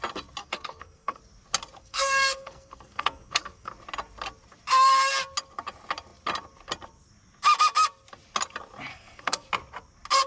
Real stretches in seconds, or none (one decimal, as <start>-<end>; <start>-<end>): 0.0-0.4; 1.2-1.8; 3.7-8.9; 9.5-10.3